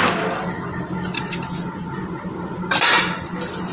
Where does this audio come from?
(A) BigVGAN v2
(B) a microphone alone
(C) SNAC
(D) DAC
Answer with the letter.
B